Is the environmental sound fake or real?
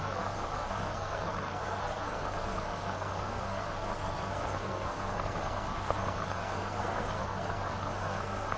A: fake